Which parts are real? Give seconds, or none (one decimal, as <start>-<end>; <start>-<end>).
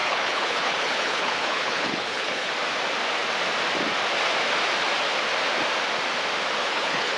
2.5-6.6